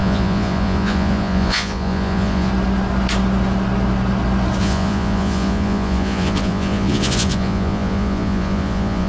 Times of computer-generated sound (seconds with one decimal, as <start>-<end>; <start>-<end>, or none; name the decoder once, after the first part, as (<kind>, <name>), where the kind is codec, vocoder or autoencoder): 0.0-2.5 (vocoder, Vocos); 4.6-9.1